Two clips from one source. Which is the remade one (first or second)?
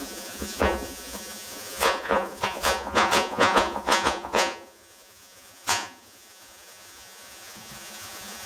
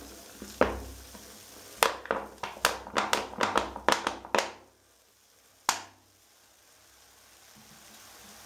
first